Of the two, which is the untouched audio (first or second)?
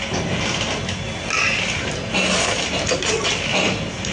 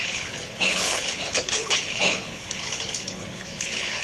first